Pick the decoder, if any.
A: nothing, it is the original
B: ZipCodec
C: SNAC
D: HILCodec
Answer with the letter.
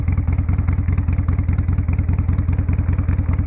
A